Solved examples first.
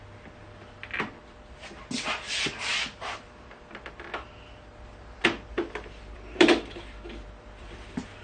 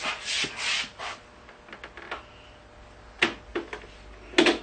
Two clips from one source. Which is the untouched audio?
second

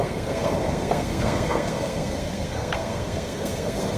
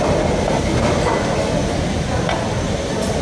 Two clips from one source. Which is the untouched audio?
second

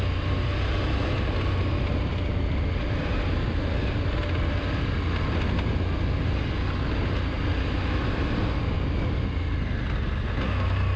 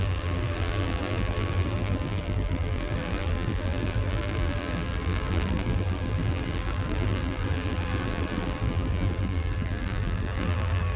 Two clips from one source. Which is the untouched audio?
first